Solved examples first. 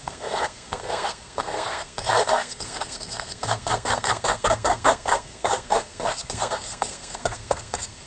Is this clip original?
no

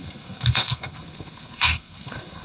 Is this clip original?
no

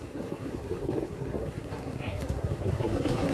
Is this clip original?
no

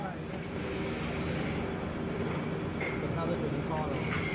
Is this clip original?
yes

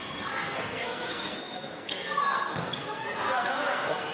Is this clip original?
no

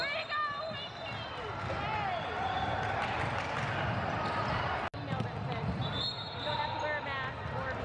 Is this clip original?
yes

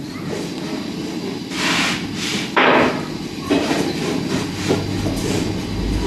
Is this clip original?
yes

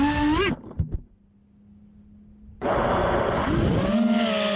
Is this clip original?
yes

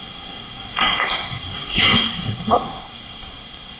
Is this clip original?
no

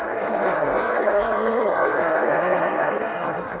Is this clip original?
no